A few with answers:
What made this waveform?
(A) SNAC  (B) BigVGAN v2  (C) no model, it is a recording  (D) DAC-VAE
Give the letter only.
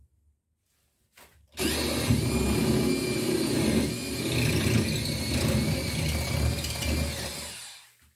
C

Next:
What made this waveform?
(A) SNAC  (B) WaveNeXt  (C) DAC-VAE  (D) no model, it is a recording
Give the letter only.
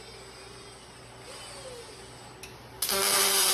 D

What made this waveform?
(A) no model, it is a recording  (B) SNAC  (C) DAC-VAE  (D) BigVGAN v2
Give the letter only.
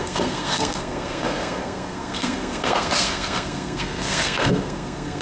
B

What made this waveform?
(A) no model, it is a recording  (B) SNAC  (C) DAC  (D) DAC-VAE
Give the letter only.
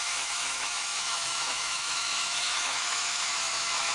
D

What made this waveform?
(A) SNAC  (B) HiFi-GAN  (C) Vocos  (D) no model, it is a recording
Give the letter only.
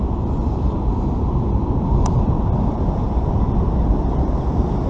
D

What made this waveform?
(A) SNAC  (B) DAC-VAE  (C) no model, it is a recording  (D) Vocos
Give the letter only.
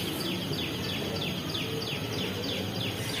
C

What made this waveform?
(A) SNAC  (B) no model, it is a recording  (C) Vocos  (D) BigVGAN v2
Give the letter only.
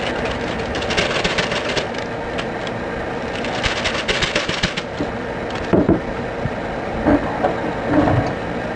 B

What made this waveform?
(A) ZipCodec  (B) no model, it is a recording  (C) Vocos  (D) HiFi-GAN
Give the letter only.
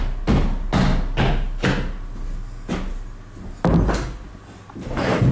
B